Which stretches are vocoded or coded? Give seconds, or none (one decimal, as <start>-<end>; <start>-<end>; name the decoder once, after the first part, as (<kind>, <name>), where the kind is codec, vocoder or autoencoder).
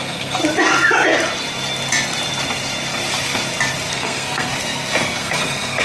0.0-0.4 (codec, SNAC); 3.9-4.5; 5.2-5.8